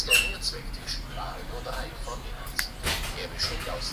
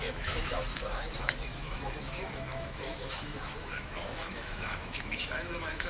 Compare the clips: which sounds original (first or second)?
first